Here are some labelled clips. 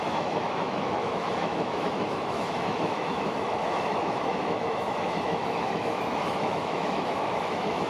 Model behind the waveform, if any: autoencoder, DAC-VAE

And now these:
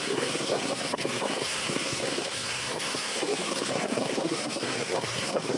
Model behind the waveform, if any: codec, SNAC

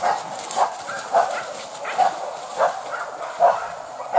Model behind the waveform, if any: vocoder, BigVGAN v2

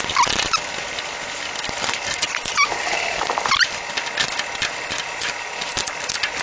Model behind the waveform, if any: none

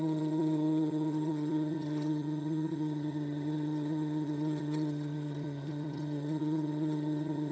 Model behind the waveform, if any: vocoder, HiFi-GAN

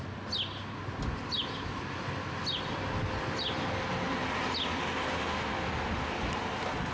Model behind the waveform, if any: none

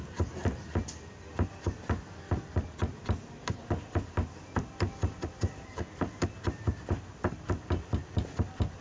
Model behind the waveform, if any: none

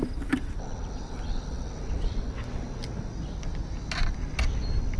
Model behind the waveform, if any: none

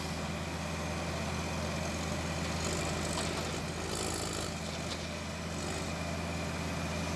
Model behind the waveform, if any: none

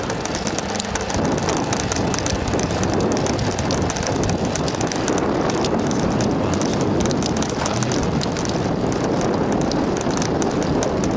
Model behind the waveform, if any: none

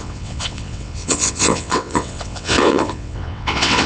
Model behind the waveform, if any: vocoder, WaveNeXt